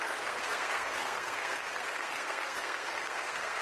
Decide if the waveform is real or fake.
fake